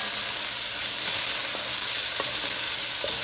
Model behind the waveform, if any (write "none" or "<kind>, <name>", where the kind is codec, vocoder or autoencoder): none